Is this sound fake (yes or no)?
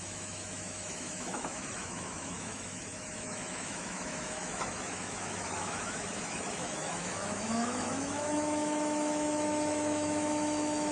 yes